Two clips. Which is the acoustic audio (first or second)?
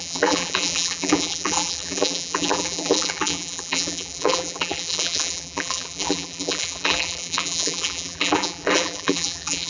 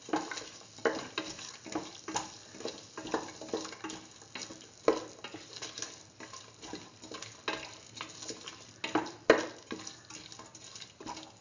second